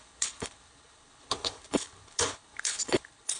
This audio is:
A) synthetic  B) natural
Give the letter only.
A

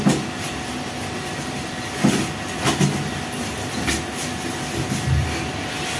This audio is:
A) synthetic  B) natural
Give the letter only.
B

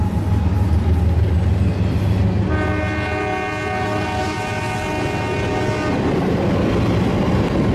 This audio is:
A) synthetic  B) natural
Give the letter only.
B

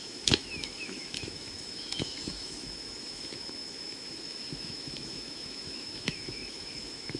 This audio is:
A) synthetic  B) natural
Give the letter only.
A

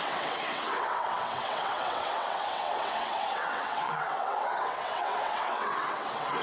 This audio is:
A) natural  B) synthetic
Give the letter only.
B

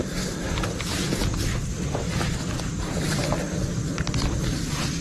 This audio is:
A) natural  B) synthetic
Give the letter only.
A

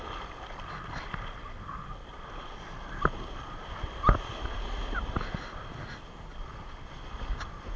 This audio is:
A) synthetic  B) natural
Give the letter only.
B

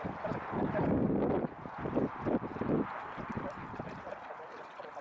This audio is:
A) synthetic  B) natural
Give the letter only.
B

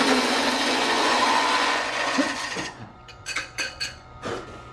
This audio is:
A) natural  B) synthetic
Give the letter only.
B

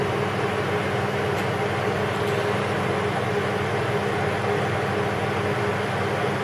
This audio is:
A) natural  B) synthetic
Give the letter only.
A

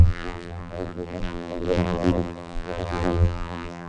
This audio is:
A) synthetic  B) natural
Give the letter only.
A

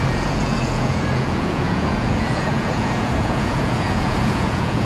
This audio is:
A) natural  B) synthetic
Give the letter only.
B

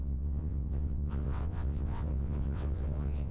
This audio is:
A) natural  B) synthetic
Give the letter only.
B